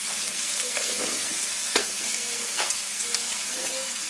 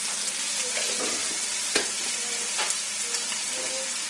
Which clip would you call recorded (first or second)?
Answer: second